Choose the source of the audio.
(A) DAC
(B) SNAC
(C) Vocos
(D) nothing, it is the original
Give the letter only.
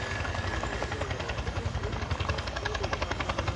A